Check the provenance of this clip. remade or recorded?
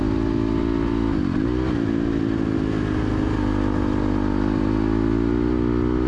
recorded